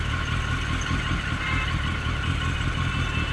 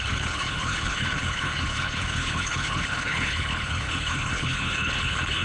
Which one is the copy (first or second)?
second